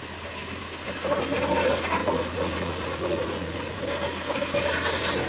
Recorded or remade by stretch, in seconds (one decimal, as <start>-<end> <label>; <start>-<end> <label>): 0.0-2.0 recorded; 2.0-3.8 remade; 3.8-5.3 recorded